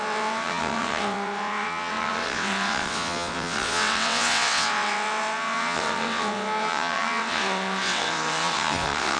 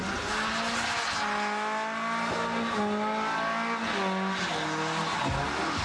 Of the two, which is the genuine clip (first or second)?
second